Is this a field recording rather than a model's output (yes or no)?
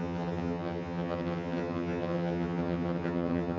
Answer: no